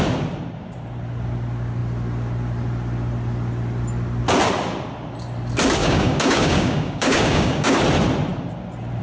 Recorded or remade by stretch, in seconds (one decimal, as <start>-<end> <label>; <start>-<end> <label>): 0.0-5.8 recorded; 5.8-7.8 remade; 7.8-9.0 recorded